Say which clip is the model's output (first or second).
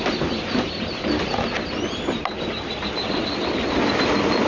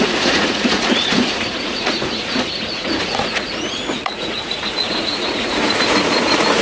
second